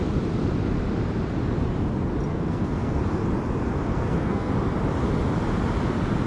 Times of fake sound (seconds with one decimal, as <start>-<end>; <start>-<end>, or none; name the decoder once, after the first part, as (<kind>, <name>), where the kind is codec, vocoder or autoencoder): 2.3-3.0 (codec, SNAC); 3.9-4.5